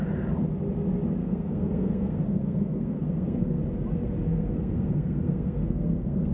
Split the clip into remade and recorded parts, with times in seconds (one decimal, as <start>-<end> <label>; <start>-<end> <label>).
0.0-1.2 recorded; 1.2-3.6 remade; 3.6-4.3 recorded; 4.3-6.3 remade